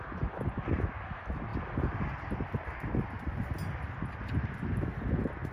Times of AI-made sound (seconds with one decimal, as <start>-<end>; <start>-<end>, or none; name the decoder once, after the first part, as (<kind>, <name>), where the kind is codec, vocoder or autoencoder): none